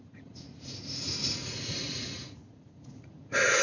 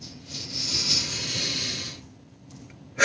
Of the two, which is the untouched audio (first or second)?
second